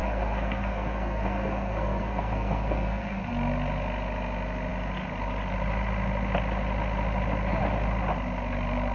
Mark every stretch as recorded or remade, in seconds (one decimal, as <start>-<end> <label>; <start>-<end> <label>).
0.0-3.2 remade; 3.2-8.9 recorded